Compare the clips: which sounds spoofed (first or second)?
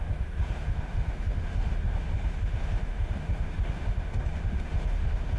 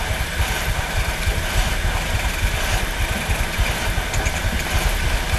first